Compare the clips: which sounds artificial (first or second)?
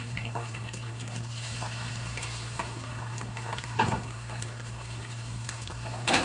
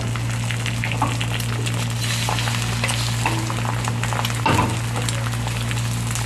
first